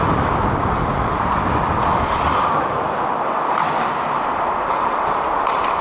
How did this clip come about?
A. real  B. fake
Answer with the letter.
A